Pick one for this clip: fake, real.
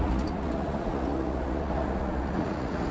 fake